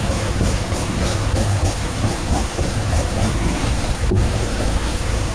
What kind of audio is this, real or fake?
fake